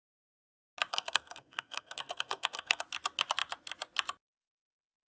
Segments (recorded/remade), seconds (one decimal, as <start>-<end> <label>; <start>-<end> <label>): 0.0-0.9 recorded; 0.9-2.8 remade; 2.8-5.1 recorded

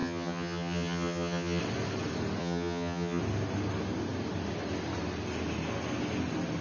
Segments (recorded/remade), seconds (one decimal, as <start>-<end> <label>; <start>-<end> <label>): 0.0-1.6 remade; 1.6-2.4 recorded; 2.4-3.2 remade; 3.2-6.6 recorded

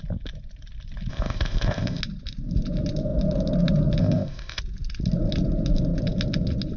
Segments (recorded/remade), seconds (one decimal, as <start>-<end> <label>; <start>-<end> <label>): 0.0-1.1 recorded; 1.1-2.0 remade; 2.0-4.0 recorded; 4.0-4.6 remade; 4.6-6.8 recorded

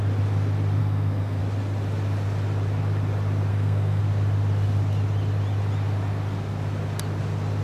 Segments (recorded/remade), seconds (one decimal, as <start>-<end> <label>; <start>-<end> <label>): 0.0-0.8 recorded; 0.8-1.4 remade; 1.4-3.5 recorded; 3.5-4.0 remade; 4.0-7.6 recorded

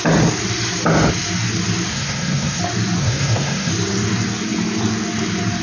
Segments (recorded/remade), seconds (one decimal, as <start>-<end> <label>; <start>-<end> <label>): 0.0-1.9 recorded; 1.9-2.6 remade; 2.6-3.0 recorded; 3.0-3.7 remade; 3.7-5.6 recorded